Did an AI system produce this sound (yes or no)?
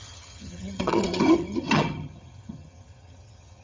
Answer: yes